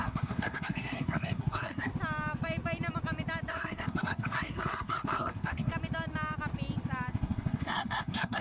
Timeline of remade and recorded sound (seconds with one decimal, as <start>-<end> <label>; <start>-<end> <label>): 0.0-1.9 remade; 1.9-3.5 recorded; 3.5-5.7 remade; 5.7-7.1 recorded; 7.1-8.4 remade